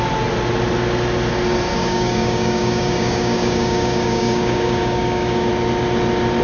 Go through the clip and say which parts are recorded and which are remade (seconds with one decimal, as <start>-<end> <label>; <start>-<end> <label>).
0.0-1.7 recorded; 1.7-5.5 remade; 5.5-6.4 recorded